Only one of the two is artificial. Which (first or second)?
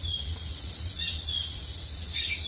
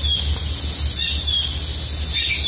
first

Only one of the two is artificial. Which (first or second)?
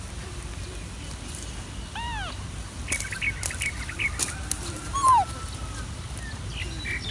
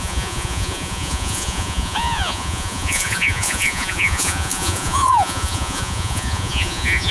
second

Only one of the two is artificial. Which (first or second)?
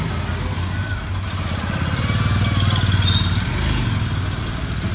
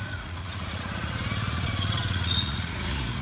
second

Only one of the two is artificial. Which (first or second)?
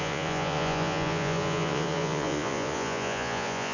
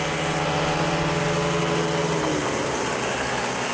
first